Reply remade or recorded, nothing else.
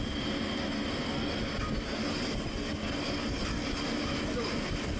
recorded